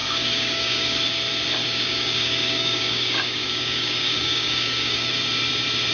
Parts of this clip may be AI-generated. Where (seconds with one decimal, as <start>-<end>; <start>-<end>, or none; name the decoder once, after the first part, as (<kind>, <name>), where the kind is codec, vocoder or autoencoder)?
0.0-1.0 (codec, DAC); 1.6-5.1